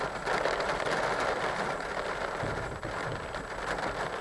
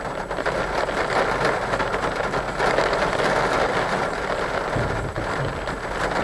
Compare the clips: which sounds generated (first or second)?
first